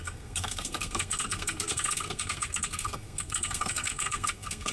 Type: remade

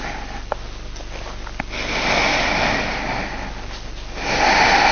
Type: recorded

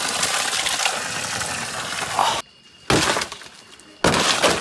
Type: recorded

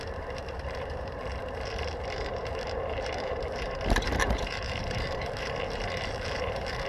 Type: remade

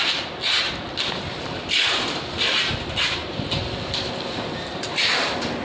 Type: recorded